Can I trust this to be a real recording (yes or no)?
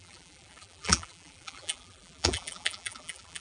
no